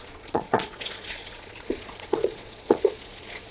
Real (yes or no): no